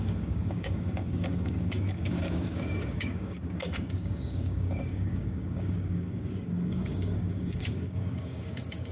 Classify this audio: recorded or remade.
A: remade